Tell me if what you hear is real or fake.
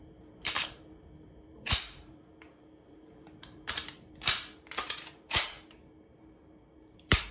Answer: fake